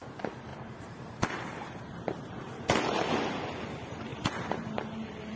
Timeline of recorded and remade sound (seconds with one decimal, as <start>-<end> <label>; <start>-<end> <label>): 0.0-0.5 recorded; 0.5-3.1 remade; 3.1-4.1 recorded; 4.1-5.4 remade